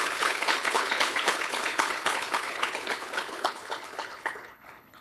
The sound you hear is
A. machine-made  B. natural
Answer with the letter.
A